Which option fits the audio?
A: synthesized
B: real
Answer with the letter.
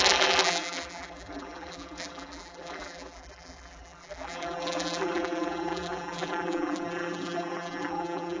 A